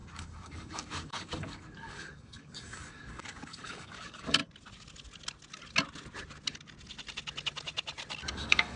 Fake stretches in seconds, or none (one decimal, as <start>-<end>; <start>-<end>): 0.0-4.4; 8.3-8.8